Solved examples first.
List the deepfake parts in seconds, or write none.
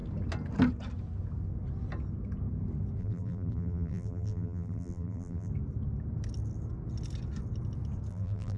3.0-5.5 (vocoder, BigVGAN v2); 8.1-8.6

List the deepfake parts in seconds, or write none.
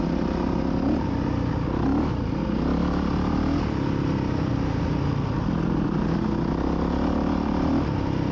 none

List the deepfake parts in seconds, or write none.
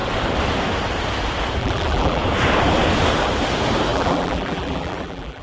1.6-2.2 (vocoder, BigVGAN v2); 3.9-5.4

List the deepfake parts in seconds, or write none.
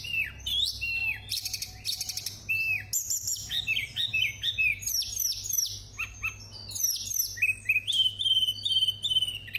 4.1-4.9 (vocoder, BigVGAN v2)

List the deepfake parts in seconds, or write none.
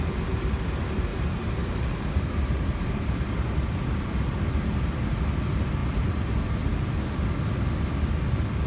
1.1-4.4 (vocoder, BigVGAN v2)